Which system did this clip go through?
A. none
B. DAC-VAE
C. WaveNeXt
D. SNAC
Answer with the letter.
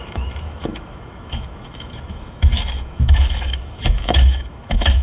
B